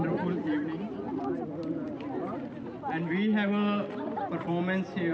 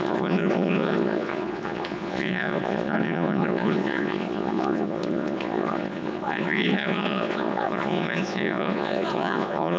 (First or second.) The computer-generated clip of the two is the second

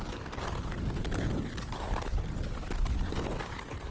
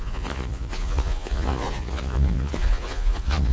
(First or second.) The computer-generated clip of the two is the second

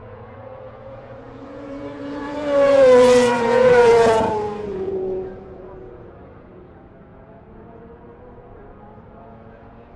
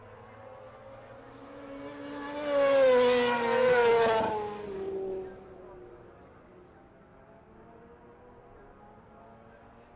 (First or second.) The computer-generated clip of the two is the first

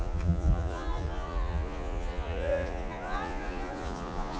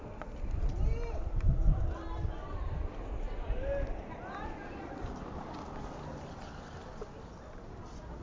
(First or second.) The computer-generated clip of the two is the first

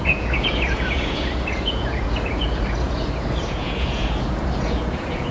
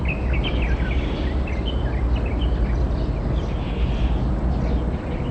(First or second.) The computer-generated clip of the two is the first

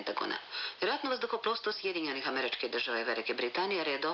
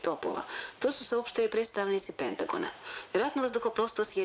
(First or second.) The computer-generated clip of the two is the second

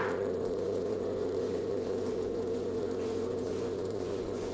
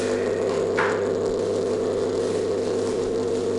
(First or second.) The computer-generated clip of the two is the first